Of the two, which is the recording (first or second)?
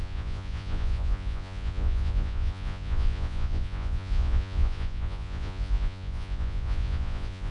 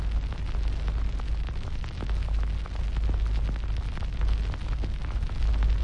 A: second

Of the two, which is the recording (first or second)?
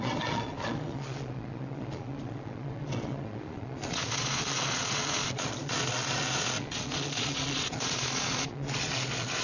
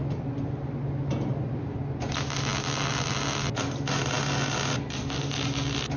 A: second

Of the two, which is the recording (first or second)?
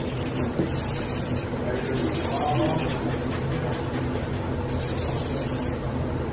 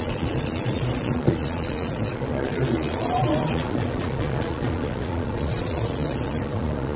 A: first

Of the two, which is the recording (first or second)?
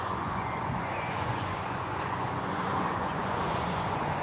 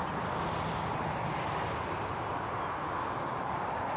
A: second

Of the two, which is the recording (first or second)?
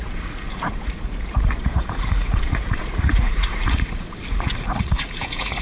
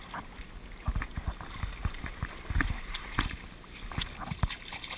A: second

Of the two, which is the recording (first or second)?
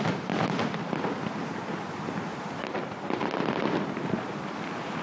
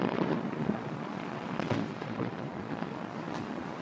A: first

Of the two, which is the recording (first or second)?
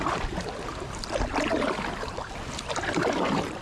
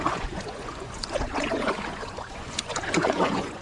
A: first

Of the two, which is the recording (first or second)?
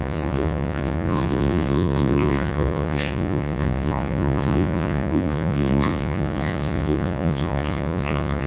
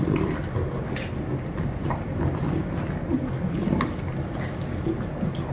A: second